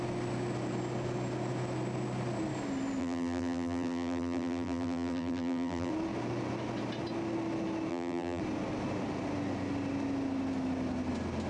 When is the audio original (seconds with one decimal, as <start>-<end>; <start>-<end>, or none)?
0.0-3.0; 5.9-7.9; 8.4-11.5